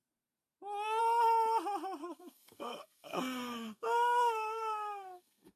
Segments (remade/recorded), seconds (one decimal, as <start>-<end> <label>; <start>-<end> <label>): 0.0-2.0 recorded; 2.0-5.6 remade